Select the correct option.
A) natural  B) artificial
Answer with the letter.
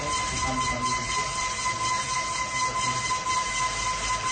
A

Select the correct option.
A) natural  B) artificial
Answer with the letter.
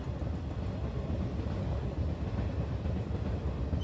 A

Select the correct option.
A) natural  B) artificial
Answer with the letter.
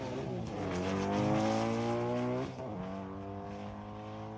A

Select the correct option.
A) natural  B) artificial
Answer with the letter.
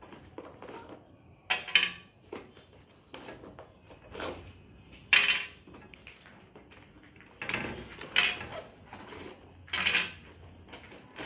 A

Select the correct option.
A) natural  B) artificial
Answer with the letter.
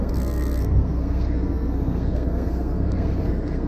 B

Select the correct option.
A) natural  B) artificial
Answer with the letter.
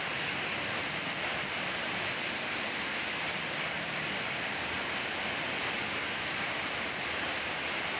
B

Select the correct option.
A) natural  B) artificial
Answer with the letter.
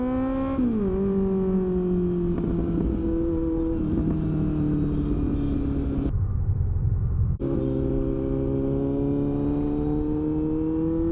A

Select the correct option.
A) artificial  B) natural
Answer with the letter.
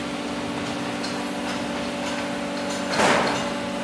B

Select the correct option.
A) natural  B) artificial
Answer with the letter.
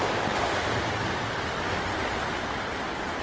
A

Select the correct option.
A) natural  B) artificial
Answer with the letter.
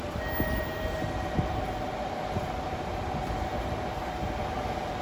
A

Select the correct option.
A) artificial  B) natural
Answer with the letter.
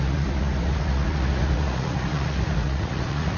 A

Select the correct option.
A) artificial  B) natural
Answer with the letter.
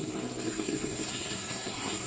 A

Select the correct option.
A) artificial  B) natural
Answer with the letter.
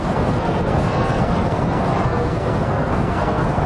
A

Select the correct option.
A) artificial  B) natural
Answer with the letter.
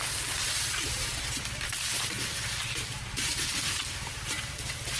A